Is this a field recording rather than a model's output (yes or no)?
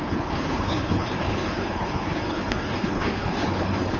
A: no